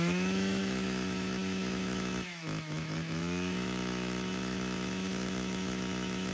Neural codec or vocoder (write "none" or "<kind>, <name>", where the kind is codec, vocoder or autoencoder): autoencoder, DAC-VAE